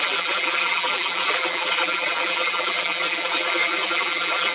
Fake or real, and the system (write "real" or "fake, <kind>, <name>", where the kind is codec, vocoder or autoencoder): fake, vocoder, BigVGAN v2